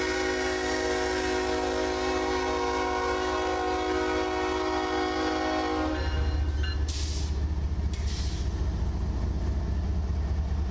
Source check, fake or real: real